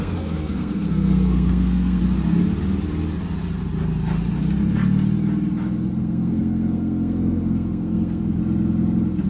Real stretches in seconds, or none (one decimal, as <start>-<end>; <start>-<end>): 2.0-6.0; 8.4-9.3